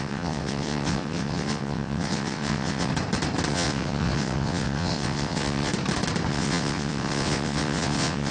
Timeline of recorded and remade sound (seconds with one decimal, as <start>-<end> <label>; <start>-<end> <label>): 0.0-2.9 remade; 2.9-3.5 recorded; 3.5-5.7 remade; 5.7-6.3 recorded; 6.3-8.3 remade